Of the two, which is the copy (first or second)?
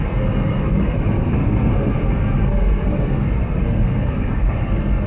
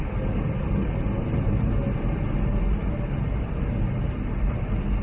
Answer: first